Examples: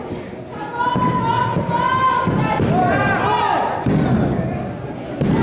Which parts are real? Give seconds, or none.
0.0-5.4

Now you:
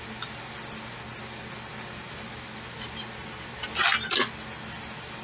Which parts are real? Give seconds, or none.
0.0-5.2

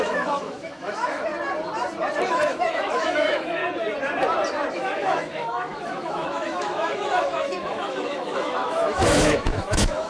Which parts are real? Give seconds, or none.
1.3-2.3; 3.6-4.7

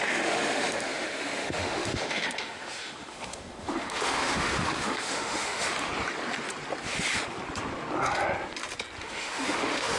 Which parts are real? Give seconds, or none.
5.9-9.0

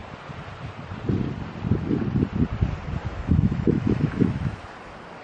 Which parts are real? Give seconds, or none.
0.0-3.0; 4.6-5.2

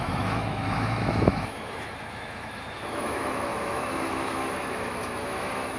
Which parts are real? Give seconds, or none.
none

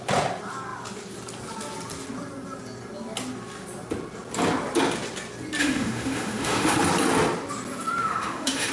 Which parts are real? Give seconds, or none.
0.0-5.6; 6.8-8.0

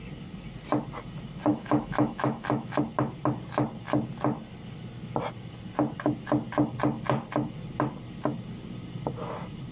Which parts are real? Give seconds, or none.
0.0-1.5; 2.8-9.7